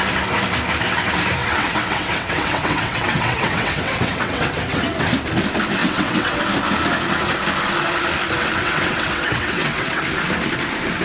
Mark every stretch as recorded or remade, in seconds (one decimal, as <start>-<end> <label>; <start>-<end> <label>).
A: 0.0-1.4 recorded; 1.4-5.1 remade; 5.1-5.8 recorded; 5.8-6.4 remade; 6.4-8.6 recorded; 8.6-10.0 remade; 10.0-11.0 recorded